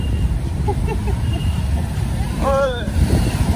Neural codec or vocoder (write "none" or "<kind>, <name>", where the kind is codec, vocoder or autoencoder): vocoder, BigVGAN v2